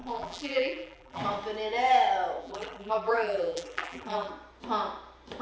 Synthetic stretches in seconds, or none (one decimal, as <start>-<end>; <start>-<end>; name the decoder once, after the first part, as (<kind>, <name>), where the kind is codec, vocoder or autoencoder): 0.0-1.2 (vocoder, BigVGAN v2); 2.4-4.3